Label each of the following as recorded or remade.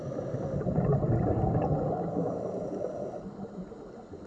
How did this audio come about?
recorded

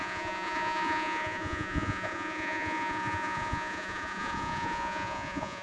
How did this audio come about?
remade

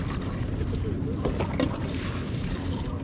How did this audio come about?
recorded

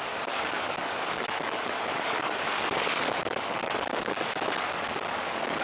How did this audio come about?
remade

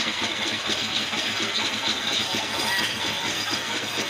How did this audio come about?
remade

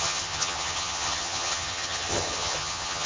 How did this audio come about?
remade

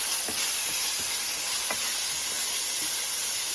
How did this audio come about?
recorded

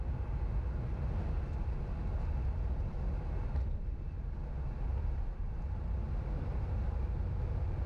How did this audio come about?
recorded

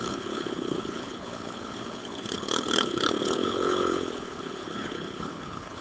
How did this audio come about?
remade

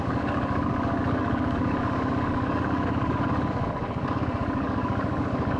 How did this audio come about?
remade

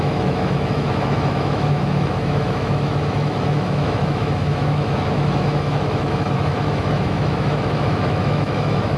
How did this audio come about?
remade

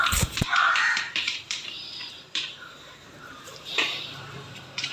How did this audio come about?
remade